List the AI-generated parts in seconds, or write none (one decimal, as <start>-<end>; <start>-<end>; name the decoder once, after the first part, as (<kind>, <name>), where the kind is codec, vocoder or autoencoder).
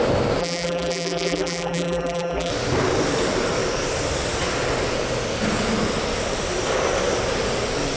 0.4-2.5 (vocoder, BigVGAN v2)